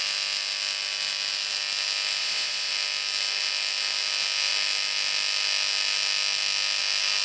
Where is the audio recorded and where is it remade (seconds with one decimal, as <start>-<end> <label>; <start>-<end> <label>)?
0.0-2.2 recorded; 2.2-2.7 remade; 2.7-7.2 recorded